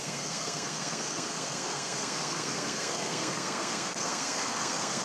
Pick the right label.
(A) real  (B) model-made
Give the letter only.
B